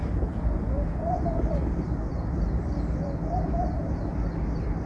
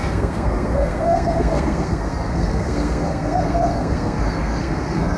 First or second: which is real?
first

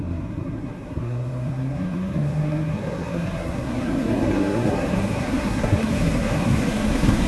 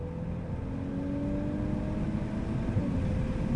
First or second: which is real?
second